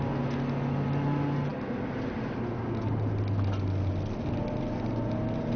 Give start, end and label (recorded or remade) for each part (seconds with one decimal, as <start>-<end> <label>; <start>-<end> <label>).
0.0-5.6 recorded